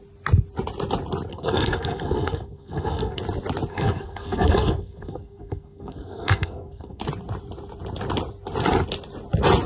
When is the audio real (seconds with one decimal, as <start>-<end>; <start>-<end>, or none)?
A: 0.0-1.3; 3.2-3.7; 7.0-9.7